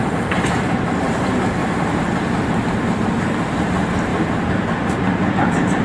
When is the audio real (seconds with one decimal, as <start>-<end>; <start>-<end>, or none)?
1.6-2.9; 4.1-5.3